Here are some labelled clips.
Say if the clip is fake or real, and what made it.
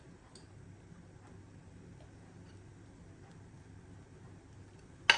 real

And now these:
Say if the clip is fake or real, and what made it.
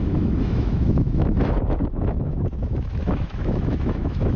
fake, autoencoder, DAC-VAE